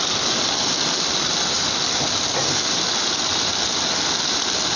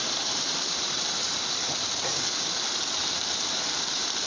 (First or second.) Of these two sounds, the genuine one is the first